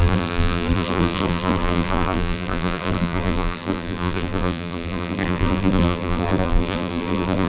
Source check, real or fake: fake